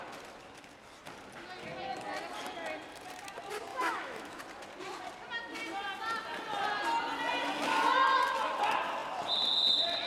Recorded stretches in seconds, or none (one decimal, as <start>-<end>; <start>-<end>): 0.0-3.7; 4.4-10.1